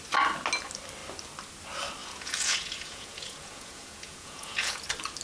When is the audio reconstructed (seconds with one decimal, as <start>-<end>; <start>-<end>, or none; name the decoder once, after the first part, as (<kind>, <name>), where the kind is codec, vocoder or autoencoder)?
2.0-4.8 (vocoder, Vocos)